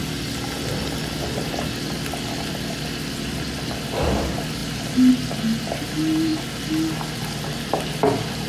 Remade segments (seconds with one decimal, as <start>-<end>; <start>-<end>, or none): none

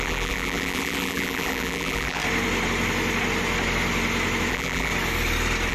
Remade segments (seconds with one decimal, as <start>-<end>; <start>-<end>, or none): 0.0-2.2; 4.5-4.9

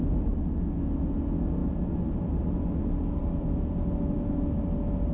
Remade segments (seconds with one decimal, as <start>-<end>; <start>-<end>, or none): none